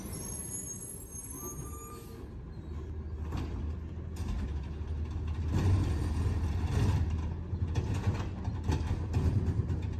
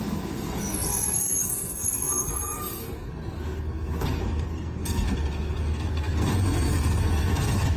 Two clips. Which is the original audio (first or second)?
first